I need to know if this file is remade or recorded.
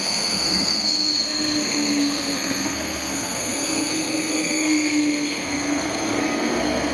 remade